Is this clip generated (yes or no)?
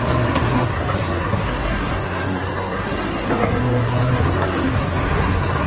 yes